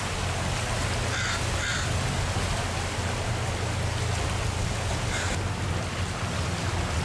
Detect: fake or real real